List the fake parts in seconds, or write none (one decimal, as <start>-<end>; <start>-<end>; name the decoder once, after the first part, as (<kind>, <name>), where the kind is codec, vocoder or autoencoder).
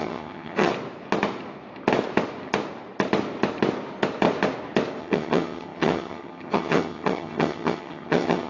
0.0-0.7 (vocoder, HiFi-GAN); 5.0-8.5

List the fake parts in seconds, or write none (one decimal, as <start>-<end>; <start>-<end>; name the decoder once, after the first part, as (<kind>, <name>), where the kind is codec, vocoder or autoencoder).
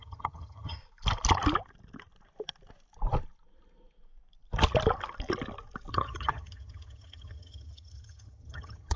0.0-0.8 (vocoder, HiFi-GAN); 5.9-9.0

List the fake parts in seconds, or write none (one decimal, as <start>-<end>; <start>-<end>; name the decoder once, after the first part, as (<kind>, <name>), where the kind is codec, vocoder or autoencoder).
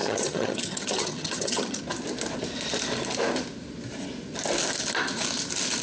0.0-1.8 (vocoder, HiFi-GAN)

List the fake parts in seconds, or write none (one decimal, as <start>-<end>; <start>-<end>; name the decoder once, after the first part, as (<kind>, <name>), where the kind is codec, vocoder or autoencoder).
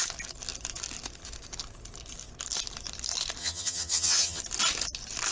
3.4-4.4 (vocoder, HiFi-GAN)